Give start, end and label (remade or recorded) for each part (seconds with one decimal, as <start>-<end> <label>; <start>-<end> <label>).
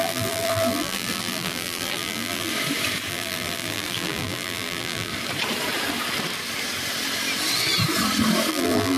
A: 0.0-2.5 remade; 2.5-3.1 recorded; 3.1-5.1 remade; 5.1-8.5 recorded; 8.5-9.0 remade